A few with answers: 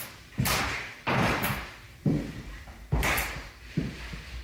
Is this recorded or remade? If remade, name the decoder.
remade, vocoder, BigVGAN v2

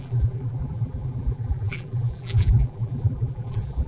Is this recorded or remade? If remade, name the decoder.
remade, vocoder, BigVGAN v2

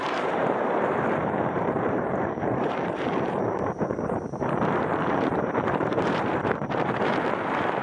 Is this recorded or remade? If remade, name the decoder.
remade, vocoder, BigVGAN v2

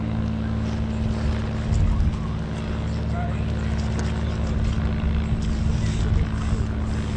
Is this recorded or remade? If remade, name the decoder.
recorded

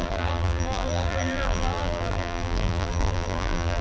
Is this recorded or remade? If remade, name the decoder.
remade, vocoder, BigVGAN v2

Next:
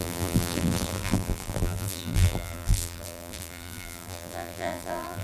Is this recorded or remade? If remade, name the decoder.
remade, vocoder, BigVGAN v2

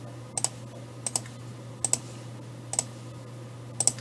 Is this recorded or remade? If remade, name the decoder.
recorded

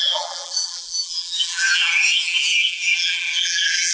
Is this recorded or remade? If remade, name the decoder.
remade, vocoder, BigVGAN v2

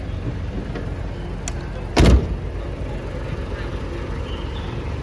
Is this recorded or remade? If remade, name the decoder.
recorded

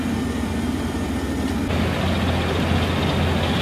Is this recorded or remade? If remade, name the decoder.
recorded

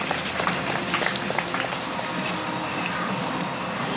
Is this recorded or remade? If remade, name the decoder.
recorded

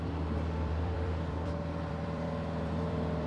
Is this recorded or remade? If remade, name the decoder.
remade, vocoder, BigVGAN v2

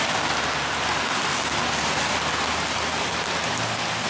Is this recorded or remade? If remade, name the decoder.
recorded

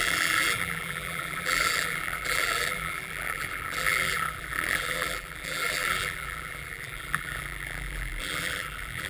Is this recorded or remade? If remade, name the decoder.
remade, vocoder, BigVGAN v2